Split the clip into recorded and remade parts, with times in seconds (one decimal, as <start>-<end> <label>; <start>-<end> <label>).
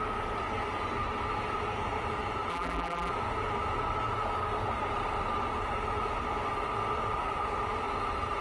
0.0-2.5 recorded; 2.5-3.1 remade; 3.1-8.4 recorded